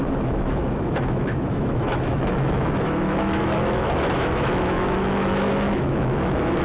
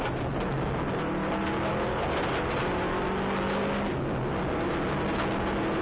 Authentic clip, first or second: second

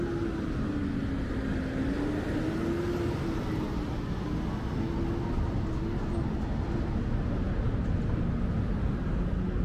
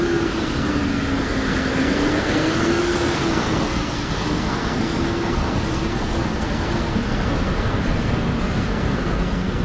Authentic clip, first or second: first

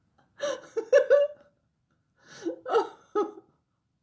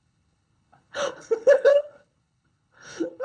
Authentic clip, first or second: first